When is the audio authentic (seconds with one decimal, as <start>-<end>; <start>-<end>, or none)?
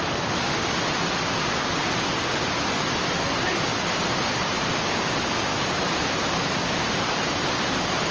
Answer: 0.0-5.5; 7.6-8.1